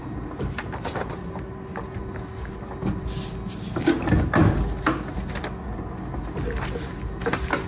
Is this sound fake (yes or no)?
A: no